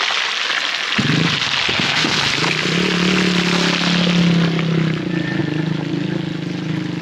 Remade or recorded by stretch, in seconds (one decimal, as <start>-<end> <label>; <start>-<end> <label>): 0.0-1.7 recorded; 1.7-2.2 remade; 2.2-7.0 recorded